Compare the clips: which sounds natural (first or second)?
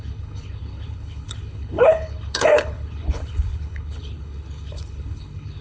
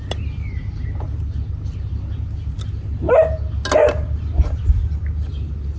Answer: second